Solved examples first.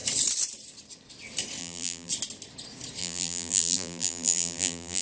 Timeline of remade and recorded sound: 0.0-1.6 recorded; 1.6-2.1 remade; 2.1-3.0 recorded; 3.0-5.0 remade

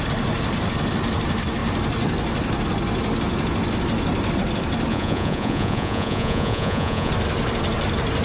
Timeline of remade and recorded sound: 0.0-4.9 recorded; 4.9-7.1 remade; 7.1-8.2 recorded

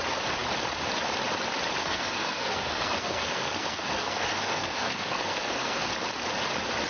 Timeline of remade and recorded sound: 0.0-1.8 recorded; 1.8-5.9 remade; 5.9-6.9 recorded

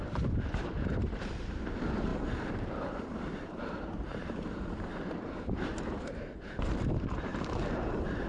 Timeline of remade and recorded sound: 0.0-8.3 remade

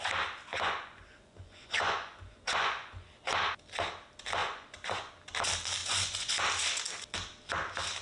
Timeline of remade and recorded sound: 0.0-0.5 recorded; 0.5-3.1 remade; 3.1-4.4 recorded; 4.4-5.1 remade; 5.1-5.8 recorded; 5.8-6.4 remade; 6.4-8.0 recorded